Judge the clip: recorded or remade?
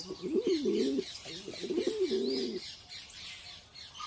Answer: recorded